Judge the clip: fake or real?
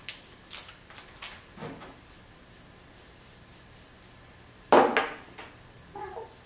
real